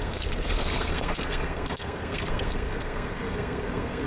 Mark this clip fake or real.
fake